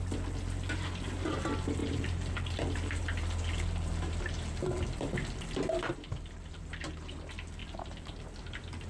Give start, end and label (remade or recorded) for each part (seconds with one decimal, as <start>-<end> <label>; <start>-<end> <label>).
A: 0.0-1.8 recorded; 1.8-6.9 remade; 6.9-7.6 recorded; 7.6-8.2 remade; 8.2-8.9 recorded